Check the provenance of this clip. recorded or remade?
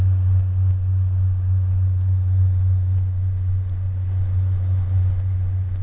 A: recorded